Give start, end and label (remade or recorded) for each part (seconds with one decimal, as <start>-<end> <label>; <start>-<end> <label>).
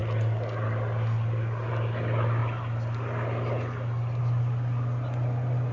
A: 0.0-5.7 recorded